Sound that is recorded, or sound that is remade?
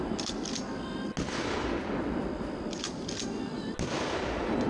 recorded